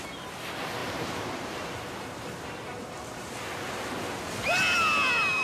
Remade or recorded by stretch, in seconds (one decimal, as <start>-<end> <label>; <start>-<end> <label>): 0.0-0.8 recorded; 0.8-4.0 remade; 4.0-5.4 recorded